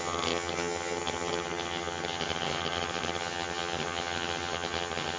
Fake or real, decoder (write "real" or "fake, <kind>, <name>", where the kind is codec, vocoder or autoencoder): fake, vocoder, HiFi-GAN